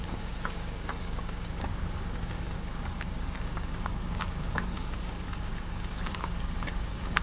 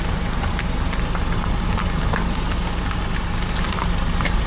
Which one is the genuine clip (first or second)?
second